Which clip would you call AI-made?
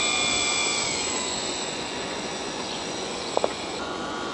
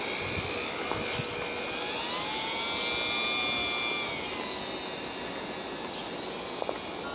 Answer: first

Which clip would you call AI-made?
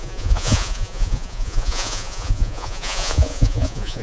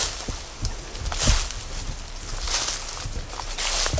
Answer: first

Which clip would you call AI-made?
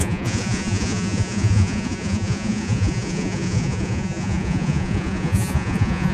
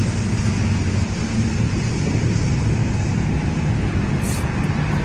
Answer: first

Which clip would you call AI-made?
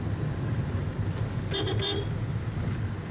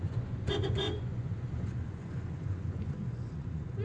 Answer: second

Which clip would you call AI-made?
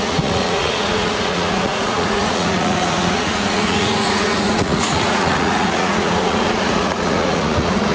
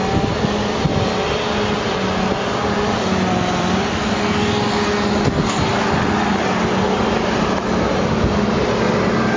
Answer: first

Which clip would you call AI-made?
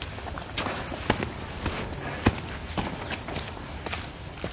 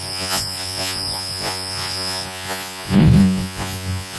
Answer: second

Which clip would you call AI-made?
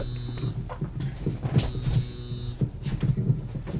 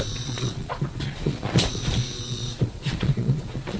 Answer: second